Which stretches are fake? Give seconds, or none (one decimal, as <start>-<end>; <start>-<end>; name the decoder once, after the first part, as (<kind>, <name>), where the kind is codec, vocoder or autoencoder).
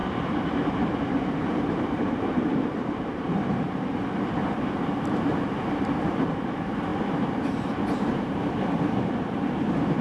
0.0-10.0 (vocoder, BigVGAN v2)